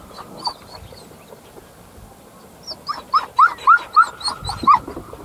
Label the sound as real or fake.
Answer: real